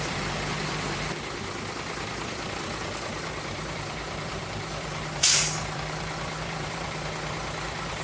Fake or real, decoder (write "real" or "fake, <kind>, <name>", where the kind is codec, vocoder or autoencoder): fake, vocoder, BigVGAN v2